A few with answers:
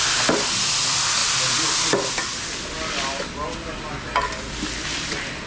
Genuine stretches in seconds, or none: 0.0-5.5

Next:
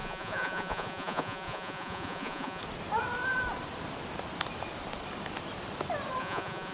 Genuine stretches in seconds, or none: 2.6-6.2